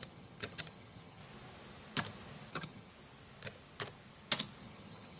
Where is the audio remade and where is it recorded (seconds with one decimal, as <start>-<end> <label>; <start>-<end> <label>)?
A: 0.0-1.2 remade; 1.2-2.5 recorded; 2.5-2.9 remade; 2.9-4.6 recorded; 4.6-5.2 remade